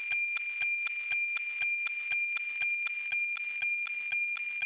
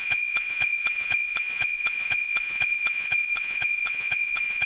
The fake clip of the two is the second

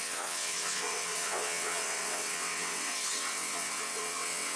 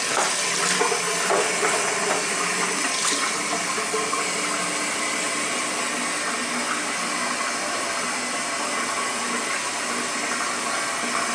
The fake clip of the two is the first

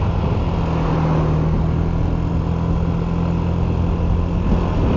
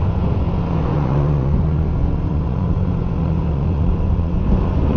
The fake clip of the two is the second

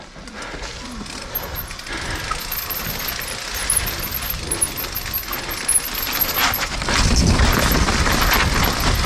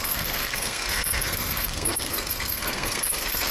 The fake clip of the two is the second